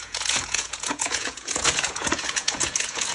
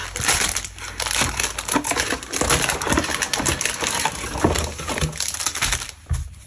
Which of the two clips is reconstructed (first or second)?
first